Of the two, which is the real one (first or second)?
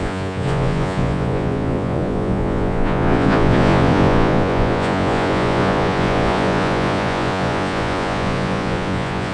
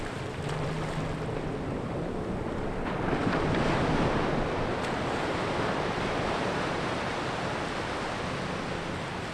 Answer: second